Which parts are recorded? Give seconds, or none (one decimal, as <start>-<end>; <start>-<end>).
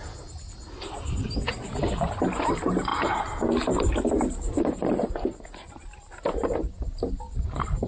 0.0-7.9